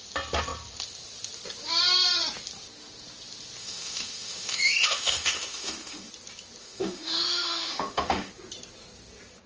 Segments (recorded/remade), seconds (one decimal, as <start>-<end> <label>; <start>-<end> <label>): 0.0-3.6 recorded; 3.6-6.1 remade; 6.1-6.6 recorded; 6.6-8.3 remade; 8.3-9.5 recorded